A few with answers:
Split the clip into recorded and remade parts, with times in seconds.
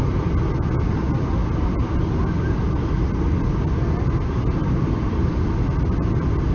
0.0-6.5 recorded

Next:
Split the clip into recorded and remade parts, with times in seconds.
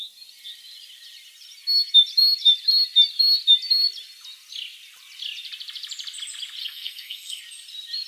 0.0-6.6 recorded; 6.6-7.4 remade; 7.4-8.1 recorded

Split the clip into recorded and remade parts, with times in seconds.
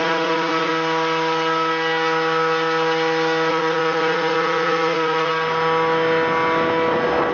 0.0-0.7 remade; 0.7-3.5 recorded; 3.5-5.3 remade; 5.3-7.3 recorded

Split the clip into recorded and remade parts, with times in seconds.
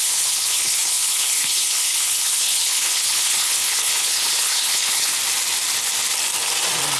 0.0-5.1 remade; 5.1-7.0 recorded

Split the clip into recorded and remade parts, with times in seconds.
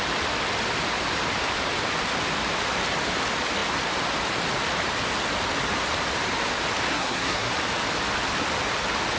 0.0-6.9 recorded; 6.9-7.5 remade; 7.5-9.2 recorded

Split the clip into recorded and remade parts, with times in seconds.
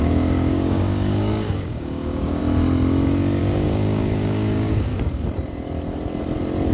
0.0-2.4 remade; 2.4-3.4 recorded; 3.4-4.9 remade; 4.9-6.7 recorded